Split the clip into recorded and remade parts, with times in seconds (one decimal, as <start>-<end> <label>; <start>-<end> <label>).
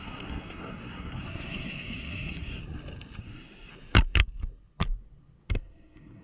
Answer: 0.0-2.6 remade; 2.6-3.2 recorded; 3.2-3.7 remade; 3.7-5.5 recorded; 5.5-6.2 remade